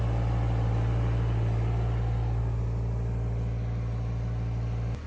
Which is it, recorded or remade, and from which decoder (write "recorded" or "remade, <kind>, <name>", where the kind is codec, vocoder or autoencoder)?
recorded